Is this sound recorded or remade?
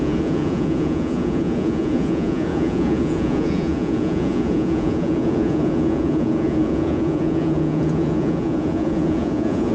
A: remade